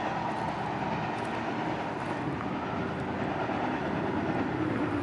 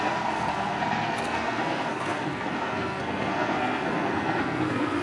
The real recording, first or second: first